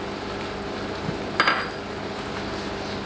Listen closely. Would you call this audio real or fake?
real